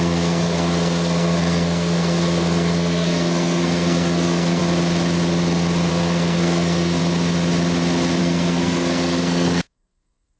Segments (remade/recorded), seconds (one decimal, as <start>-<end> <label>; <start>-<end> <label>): 0.0-4.6 remade; 4.6-5.9 recorded; 5.9-7.0 remade; 7.0-8.2 recorded; 8.2-10.4 remade